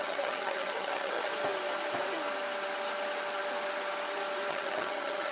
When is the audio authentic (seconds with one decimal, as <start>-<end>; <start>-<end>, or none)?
1.3-4.5